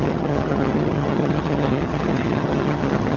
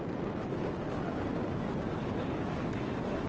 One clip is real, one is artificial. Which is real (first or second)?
second